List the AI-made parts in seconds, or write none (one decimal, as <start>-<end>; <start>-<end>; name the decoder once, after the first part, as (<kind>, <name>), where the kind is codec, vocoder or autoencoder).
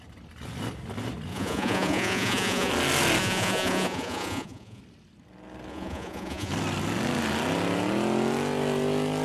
1.3-2.7 (vocoder, Vocos); 3.2-4.8; 5.7-6.5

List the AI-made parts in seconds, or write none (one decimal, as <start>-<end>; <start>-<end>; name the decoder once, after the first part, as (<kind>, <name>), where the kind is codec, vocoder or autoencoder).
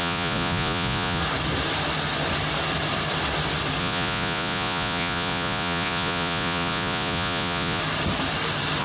0.0-1.2 (vocoder, Vocos); 3.8-7.8